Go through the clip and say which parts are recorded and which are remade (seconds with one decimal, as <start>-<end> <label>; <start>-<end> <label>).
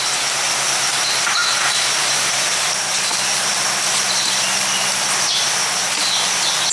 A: 0.0-6.7 recorded